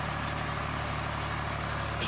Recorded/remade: recorded